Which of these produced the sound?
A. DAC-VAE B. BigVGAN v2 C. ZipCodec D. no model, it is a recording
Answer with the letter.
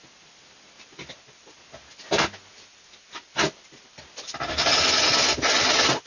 D